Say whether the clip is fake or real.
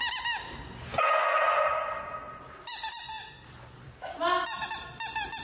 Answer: real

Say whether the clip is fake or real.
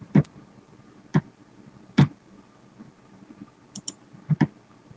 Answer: fake